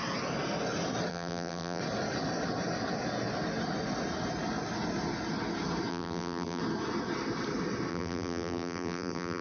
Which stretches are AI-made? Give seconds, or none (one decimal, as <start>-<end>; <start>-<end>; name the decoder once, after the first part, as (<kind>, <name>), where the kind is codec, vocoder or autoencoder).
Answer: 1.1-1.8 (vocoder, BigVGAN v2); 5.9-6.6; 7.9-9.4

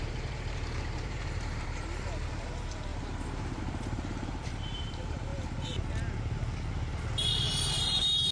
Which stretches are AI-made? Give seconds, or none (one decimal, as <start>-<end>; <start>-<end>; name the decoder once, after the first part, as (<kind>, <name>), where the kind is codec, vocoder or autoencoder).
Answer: 0.0-2.9 (vocoder, BigVGAN v2); 3.6-5.3; 7.6-8.3

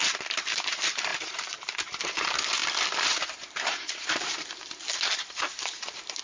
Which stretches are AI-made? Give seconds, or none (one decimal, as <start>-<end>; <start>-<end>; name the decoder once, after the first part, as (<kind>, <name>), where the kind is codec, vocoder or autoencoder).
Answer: 0.0-6.2 (vocoder, BigVGAN v2)

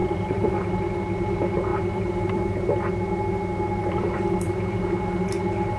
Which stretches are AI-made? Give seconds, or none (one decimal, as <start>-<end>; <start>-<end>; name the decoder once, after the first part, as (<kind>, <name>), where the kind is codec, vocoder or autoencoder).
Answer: 0.0-0.7 (vocoder, BigVGAN v2); 1.7-2.9; 3.8-4.6

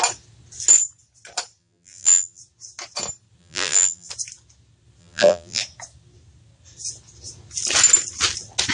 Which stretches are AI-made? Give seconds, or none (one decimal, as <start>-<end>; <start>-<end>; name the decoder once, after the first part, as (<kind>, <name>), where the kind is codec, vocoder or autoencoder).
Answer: 1.6-2.4 (vocoder, BigVGAN v2); 3.4-4.1; 5.0-5.6

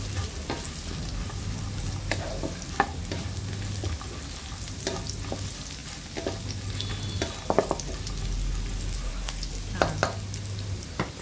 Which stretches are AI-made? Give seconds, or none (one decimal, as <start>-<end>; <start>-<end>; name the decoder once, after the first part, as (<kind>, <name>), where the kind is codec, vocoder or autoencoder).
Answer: none

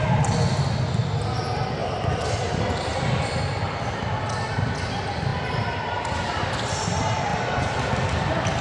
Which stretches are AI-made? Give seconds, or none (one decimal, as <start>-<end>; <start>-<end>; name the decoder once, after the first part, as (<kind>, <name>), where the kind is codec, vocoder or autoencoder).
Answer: 1.8-3.4 (vocoder, BigVGAN v2); 5.3-6.0; 7.3-8.6